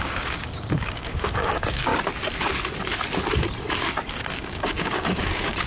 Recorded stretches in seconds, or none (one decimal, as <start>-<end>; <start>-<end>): 1.9-4.1